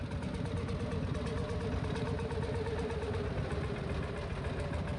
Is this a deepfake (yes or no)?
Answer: no